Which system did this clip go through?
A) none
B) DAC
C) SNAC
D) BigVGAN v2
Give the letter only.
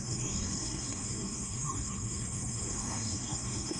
C